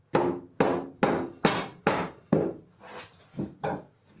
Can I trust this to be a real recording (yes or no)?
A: yes